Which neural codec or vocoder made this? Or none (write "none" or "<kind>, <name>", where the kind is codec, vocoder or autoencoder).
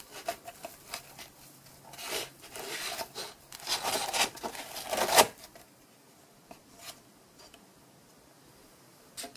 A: none